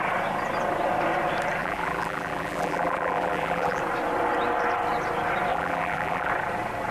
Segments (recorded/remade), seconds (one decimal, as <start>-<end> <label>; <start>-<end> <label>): 0.0-1.6 recorded; 1.6-3.8 remade; 3.8-5.5 recorded; 5.5-6.3 remade; 6.3-6.9 recorded